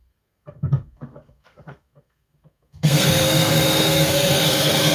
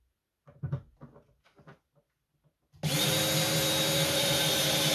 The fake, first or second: first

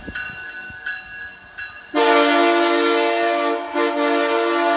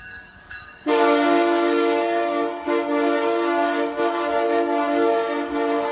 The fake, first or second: second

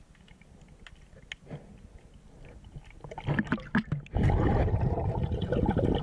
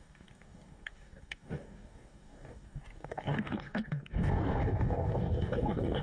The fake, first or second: second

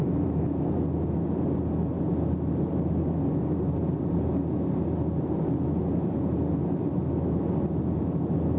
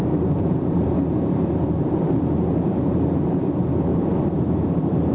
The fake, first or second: second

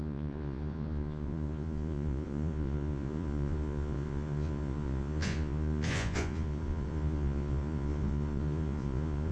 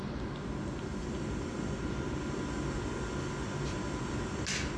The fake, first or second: first